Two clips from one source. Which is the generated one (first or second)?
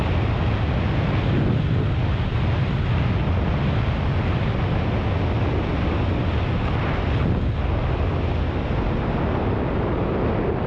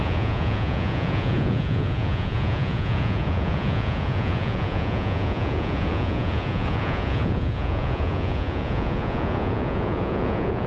second